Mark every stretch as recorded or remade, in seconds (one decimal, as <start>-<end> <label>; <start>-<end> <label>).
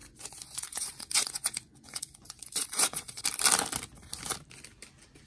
0.0-3.2 remade; 3.2-5.3 recorded